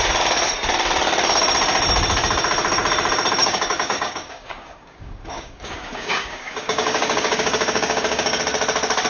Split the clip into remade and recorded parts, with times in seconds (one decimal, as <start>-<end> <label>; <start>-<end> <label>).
0.0-3.4 recorded; 3.4-8.4 remade; 8.4-9.1 recorded